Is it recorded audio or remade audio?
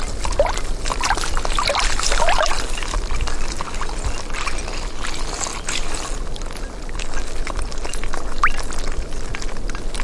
recorded